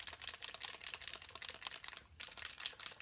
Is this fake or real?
real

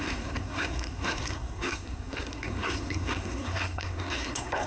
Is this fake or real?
fake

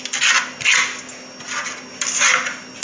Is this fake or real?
real